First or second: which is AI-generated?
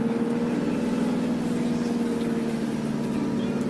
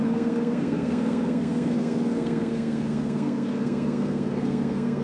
second